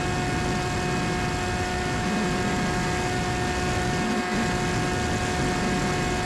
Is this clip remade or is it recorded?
recorded